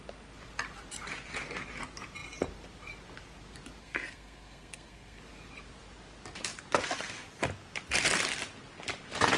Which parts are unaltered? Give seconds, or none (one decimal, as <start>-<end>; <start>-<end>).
0.0-3.8; 5.2-9.4